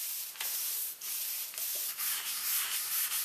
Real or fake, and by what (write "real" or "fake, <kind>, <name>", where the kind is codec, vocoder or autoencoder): fake, vocoder, BigVGAN v2